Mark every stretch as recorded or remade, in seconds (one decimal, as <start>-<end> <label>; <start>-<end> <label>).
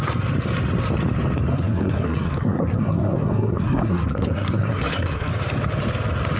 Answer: 0.0-1.5 recorded; 1.5-5.3 remade; 5.3-6.4 recorded